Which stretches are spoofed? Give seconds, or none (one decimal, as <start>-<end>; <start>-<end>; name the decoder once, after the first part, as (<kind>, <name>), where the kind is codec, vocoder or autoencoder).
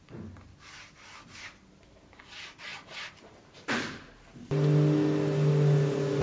2.7-3.8 (vocoder, BigVGAN v2)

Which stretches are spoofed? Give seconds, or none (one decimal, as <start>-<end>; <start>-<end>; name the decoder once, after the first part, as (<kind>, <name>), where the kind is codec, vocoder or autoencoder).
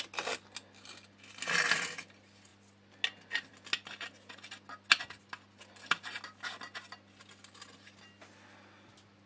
none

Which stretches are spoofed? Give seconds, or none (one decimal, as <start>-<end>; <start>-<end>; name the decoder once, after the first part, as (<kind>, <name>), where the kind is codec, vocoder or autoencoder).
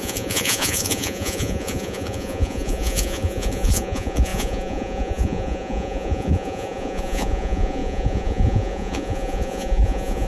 0.0-10.3 (vocoder, Vocos)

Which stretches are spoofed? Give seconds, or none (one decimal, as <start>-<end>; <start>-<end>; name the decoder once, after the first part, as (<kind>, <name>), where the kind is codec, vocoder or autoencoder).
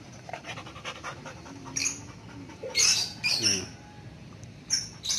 0.0-1.8 (vocoder, BigVGAN v2); 2.5-3.0; 4.2-5.2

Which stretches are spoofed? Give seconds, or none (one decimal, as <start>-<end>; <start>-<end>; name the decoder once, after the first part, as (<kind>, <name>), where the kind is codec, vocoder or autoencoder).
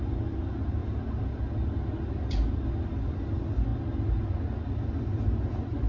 none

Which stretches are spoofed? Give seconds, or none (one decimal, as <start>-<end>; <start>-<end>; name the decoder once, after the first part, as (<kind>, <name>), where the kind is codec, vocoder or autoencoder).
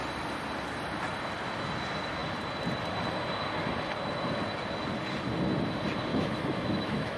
6.1-7.2 (autoencoder, DAC-VAE)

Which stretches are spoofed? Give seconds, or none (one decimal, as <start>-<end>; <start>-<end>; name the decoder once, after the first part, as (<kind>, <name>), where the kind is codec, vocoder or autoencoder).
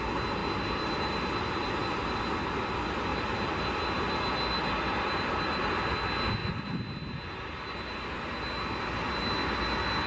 none